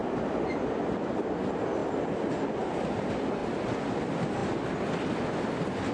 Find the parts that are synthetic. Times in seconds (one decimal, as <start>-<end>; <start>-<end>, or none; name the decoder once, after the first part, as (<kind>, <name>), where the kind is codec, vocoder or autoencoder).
none